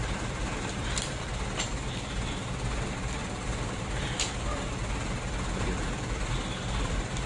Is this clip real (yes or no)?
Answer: no